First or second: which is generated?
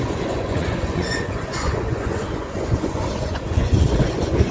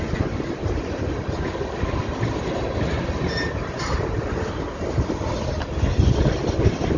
first